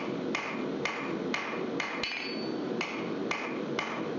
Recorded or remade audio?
recorded